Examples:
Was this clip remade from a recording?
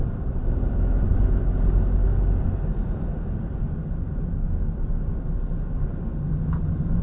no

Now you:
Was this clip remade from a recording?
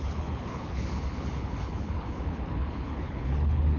yes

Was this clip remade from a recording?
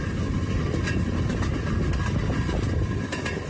no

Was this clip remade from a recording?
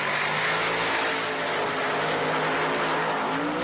no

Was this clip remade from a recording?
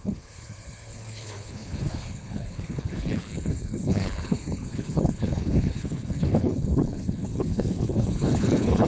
yes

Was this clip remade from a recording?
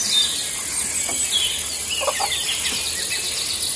no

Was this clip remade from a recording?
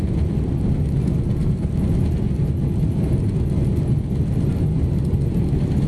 no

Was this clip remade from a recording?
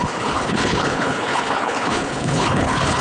yes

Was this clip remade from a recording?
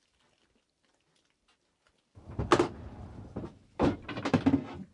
no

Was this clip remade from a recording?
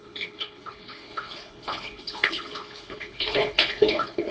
yes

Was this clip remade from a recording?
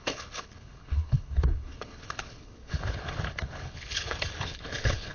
yes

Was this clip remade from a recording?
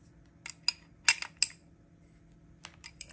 no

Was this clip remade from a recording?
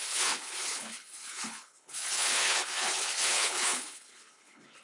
yes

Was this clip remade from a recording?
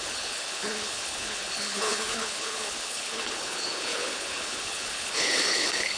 yes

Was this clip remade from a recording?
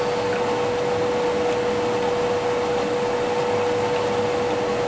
no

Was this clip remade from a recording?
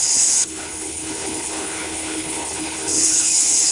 yes